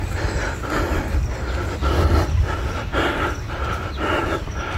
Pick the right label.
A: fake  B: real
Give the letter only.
B